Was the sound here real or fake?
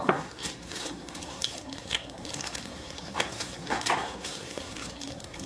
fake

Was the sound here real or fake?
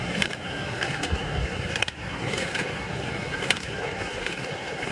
fake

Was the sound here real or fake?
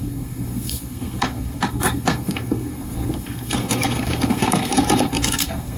fake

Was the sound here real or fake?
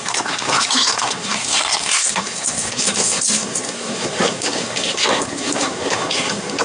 fake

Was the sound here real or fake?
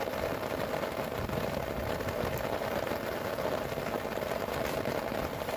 real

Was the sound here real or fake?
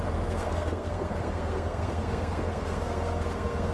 fake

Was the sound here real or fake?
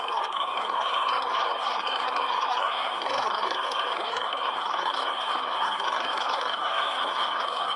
fake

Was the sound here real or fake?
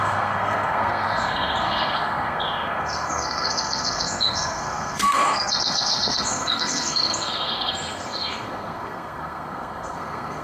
fake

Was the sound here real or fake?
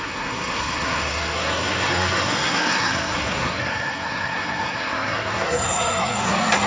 fake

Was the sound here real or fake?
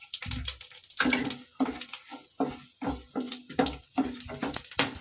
real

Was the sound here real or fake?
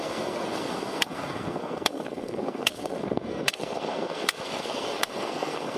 fake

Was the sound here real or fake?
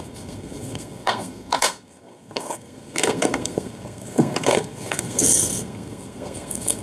fake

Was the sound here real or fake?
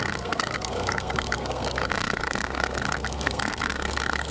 fake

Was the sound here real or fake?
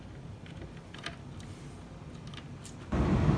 real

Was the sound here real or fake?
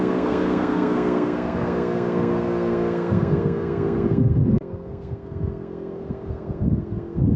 fake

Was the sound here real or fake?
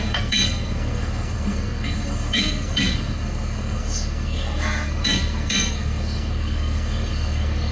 fake